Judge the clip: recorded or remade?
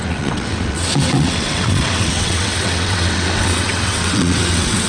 remade